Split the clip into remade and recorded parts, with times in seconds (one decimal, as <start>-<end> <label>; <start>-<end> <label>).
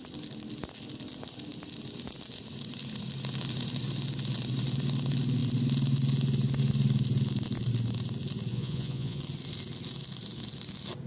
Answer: 0.0-8.5 recorded; 8.5-9.2 remade; 9.2-11.1 recorded